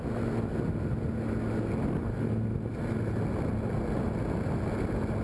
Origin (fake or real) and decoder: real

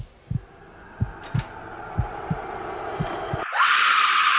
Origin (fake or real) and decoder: real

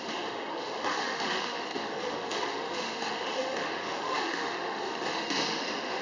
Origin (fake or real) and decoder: fake, autoencoder, DAC-VAE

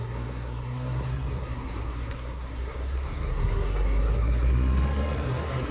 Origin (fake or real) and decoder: fake, codec, SNAC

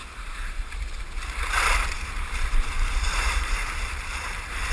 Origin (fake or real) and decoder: fake, vocoder, BigVGAN v2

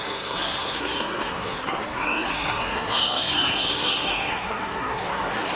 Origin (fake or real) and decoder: fake, codec, SNAC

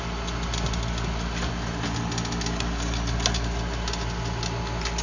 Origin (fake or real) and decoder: real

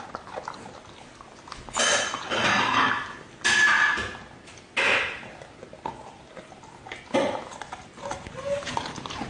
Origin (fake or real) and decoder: real